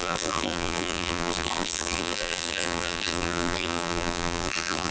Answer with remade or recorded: remade